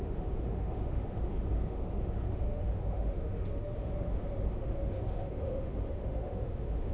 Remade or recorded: remade